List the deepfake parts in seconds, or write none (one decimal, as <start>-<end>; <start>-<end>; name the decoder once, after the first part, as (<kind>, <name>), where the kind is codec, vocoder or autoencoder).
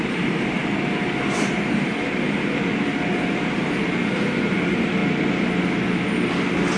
0.0-0.6 (vocoder, BigVGAN v2); 1.5-5.0